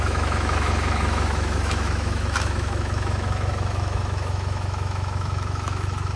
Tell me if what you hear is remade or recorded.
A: remade